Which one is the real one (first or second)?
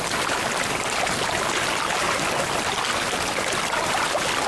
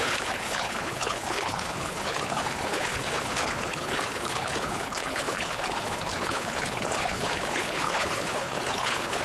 first